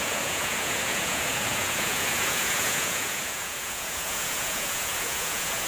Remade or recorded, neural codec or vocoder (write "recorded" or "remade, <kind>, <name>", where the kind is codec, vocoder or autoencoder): remade, vocoder, Vocos